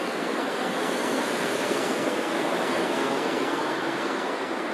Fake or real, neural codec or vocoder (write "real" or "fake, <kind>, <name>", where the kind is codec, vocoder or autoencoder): fake, codec, SNAC